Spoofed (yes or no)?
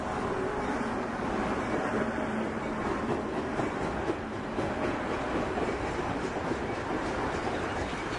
yes